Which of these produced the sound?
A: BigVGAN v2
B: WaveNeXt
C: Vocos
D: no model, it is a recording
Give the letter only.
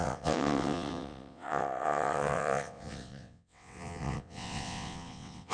B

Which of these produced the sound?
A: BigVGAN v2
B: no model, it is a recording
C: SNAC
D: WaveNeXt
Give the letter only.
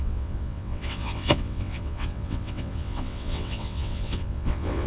D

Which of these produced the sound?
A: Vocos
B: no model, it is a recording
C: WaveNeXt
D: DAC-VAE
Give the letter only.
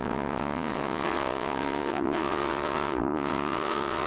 C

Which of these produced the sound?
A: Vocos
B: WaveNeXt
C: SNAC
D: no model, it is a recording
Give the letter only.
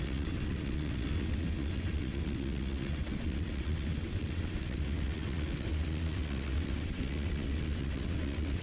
B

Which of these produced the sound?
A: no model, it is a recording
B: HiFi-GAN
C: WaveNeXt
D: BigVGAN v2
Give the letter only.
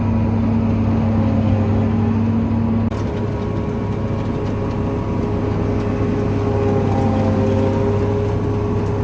A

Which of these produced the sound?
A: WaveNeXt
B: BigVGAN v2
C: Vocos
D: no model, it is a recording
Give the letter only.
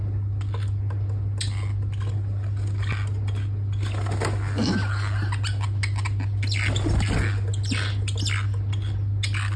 D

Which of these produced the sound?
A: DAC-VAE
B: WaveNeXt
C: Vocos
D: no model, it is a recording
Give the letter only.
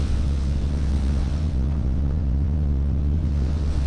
B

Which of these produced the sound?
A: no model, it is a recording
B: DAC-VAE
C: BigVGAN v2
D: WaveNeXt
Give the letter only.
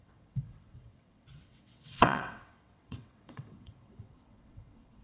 D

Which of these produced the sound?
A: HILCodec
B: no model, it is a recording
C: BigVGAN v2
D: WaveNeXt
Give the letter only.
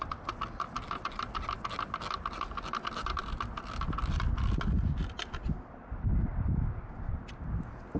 B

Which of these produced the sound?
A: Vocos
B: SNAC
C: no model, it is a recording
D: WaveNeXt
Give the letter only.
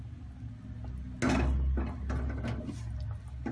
C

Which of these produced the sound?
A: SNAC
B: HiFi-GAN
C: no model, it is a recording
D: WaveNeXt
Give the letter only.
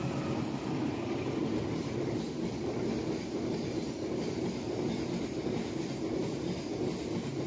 C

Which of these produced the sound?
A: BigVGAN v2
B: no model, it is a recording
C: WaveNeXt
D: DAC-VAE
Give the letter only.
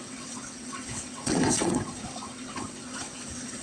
C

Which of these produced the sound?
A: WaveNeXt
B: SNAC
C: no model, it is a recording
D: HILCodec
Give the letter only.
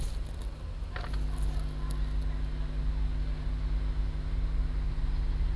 C